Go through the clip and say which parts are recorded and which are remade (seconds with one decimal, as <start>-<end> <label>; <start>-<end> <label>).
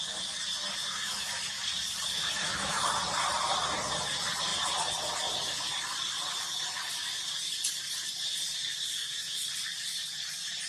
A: 0.0-0.8 recorded; 0.8-1.6 remade; 1.6-2.1 recorded; 2.1-2.8 remade; 2.8-9.0 recorded; 9.0-9.5 remade; 9.5-10.7 recorded